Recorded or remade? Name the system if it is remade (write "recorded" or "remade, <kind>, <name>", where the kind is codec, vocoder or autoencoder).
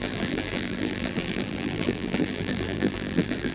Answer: remade, vocoder, BigVGAN v2